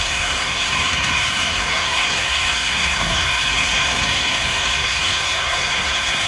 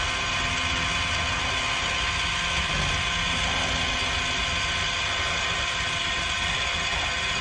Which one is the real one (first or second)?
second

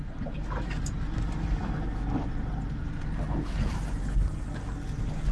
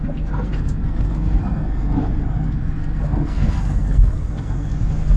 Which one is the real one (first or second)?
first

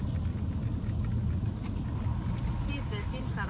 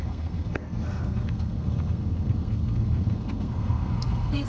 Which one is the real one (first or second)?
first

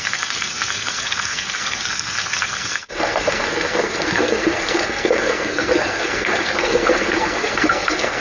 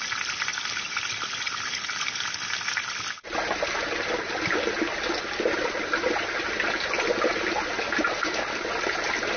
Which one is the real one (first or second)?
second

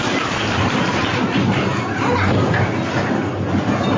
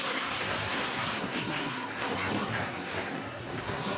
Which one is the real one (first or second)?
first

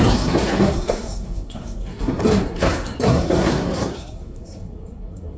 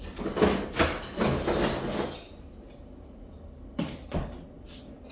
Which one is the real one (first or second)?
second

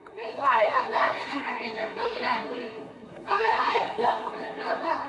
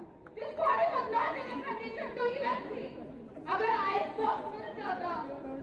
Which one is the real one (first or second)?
second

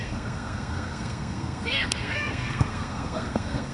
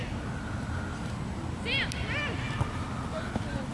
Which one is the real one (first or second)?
second